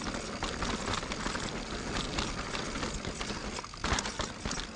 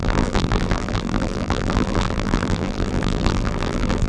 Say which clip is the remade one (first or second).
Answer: second